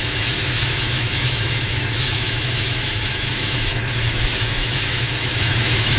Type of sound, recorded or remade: remade